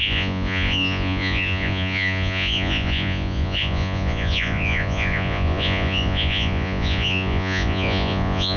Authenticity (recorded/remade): remade